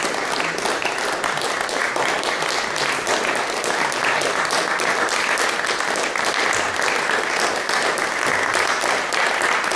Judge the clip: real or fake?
real